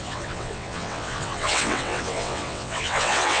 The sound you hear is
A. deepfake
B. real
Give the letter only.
A